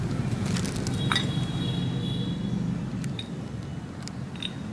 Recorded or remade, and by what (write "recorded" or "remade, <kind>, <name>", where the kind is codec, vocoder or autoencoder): recorded